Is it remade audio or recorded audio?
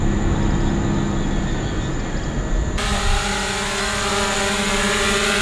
recorded